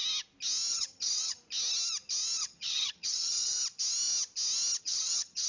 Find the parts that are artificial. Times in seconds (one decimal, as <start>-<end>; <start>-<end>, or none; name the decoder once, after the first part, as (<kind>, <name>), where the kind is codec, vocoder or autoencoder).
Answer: 0.7-1.4 (vocoder, HiFi-GAN); 2.4-3.6; 4.8-5.5